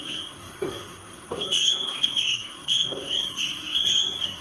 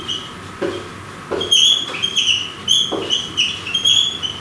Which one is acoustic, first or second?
second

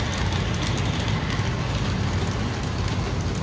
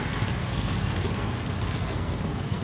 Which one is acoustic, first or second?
first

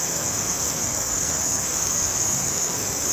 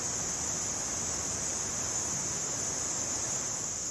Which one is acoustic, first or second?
second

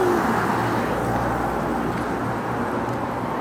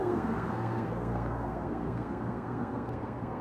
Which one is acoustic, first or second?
first